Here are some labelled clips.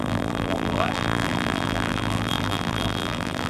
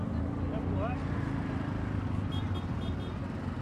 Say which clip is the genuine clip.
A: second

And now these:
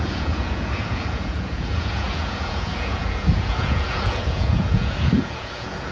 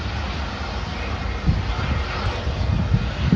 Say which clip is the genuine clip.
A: second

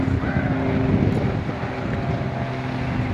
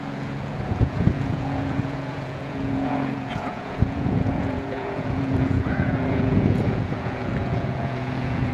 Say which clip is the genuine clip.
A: first